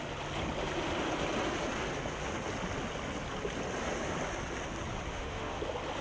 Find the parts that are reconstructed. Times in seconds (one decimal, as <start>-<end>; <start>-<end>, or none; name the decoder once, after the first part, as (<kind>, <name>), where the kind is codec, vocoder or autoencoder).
5.1-5.6 (autoencoder, DAC-VAE)

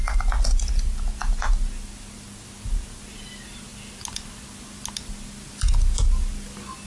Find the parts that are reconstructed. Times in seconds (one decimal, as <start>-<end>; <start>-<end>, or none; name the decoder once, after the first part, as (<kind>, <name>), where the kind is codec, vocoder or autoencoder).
none

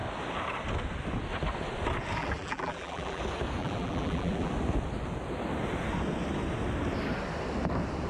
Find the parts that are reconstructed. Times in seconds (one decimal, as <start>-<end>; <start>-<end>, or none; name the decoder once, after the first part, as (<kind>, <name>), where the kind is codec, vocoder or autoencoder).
2.2-3.2 (vocoder, BigVGAN v2); 3.6-4.5

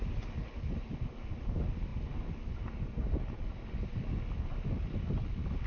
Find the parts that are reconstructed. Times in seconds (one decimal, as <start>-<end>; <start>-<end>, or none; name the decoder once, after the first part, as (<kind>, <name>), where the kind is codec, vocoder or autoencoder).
none

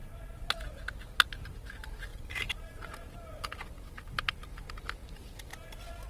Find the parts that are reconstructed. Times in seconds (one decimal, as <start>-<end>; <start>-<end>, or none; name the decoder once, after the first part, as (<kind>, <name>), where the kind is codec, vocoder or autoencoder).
none